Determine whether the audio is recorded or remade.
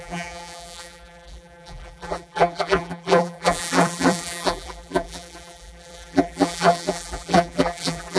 remade